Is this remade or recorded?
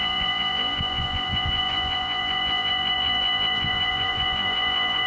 remade